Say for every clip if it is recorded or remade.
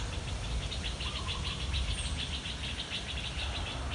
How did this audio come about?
remade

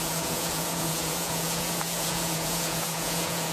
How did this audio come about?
remade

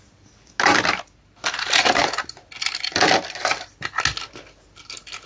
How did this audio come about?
recorded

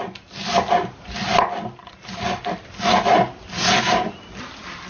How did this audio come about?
recorded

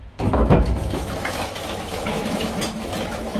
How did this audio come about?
remade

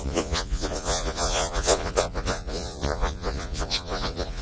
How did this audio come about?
remade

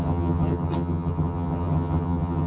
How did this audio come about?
remade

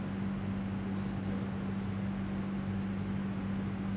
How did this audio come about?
recorded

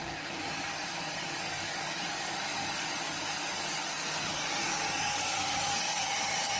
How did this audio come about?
remade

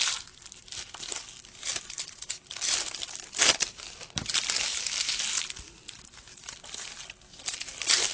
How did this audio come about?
remade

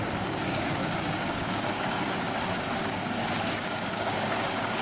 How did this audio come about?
remade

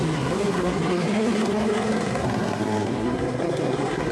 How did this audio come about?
remade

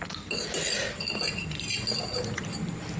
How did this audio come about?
recorded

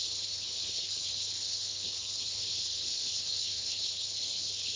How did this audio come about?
remade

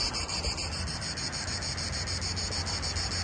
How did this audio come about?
recorded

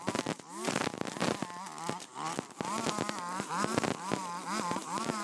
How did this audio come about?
recorded